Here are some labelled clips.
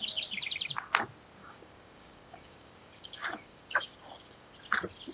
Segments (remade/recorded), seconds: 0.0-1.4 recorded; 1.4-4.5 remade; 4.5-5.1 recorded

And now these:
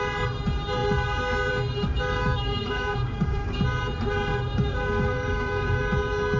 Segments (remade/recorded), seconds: 0.0-2.2 recorded; 2.2-3.6 remade; 3.6-4.3 recorded; 4.3-5.8 remade; 5.8-6.4 recorded

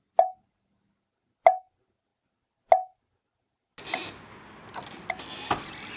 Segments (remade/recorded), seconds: 0.0-6.0 recorded

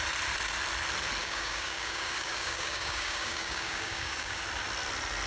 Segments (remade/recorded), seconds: 0.0-1.2 recorded; 1.2-4.4 remade; 4.4-5.3 recorded

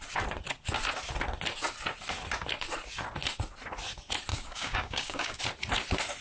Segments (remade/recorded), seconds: 0.0-4.3 recorded; 4.3-5.4 remade; 5.4-6.2 recorded

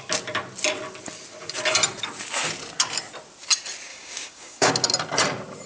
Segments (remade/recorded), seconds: 0.0-3.9 recorded; 3.9-4.7 remade; 4.7-5.7 recorded

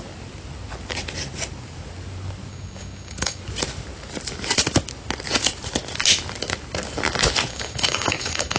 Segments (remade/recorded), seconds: 0.0-2.5 recorded; 2.5-3.4 remade; 3.4-7.5 recorded; 7.5-8.6 remade